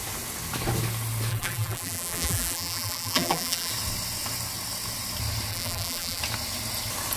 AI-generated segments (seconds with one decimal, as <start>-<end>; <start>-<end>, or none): 1.3-3.7; 5.5-6.2

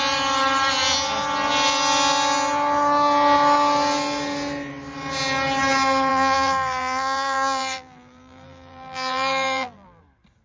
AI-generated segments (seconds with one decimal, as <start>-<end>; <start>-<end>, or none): 6.1-10.0

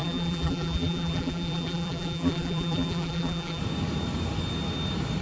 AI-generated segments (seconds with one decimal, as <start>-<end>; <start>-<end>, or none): 0.0-3.6

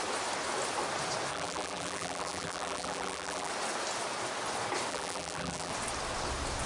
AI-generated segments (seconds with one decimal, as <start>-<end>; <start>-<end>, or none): 1.3-3.5; 4.9-5.7

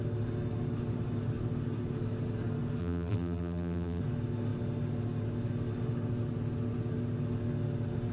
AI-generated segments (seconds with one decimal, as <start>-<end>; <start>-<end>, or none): 2.8-4.0

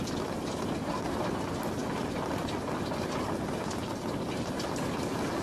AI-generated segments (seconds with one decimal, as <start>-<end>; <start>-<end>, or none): none

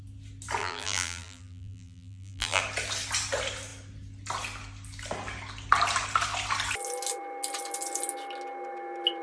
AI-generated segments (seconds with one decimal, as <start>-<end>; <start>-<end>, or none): 0.6-2.6

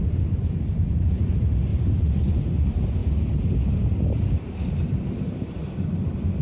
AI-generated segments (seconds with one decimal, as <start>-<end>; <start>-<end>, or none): 0.0-1.7; 2.6-3.0; 4.2-5.6